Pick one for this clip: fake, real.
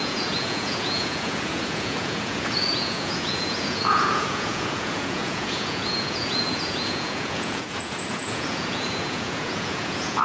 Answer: fake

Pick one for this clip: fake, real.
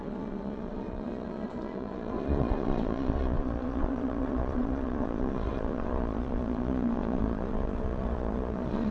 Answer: fake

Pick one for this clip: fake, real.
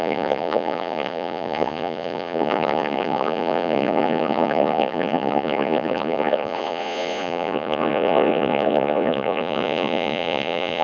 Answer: fake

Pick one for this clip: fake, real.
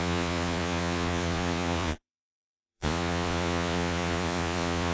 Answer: fake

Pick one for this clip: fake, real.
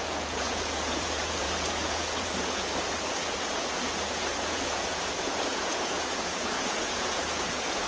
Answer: fake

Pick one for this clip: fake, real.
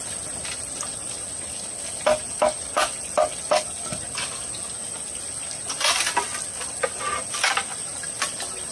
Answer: real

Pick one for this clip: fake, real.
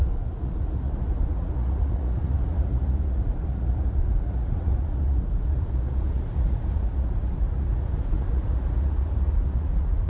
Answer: fake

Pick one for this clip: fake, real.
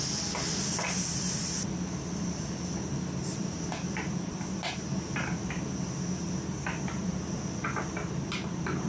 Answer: real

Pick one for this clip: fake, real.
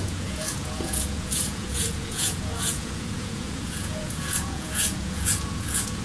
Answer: fake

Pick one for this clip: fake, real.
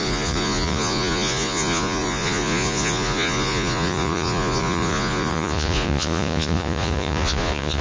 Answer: fake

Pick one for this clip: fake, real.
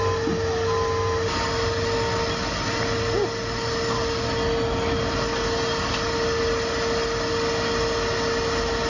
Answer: real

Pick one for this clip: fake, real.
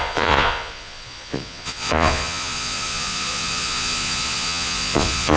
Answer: fake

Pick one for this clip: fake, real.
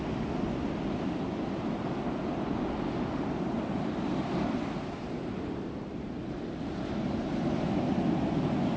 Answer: real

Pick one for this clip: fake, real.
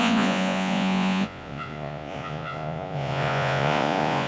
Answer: fake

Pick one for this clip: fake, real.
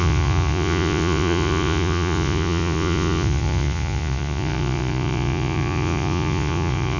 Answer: fake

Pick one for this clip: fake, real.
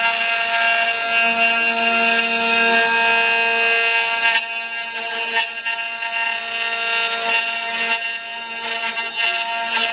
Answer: real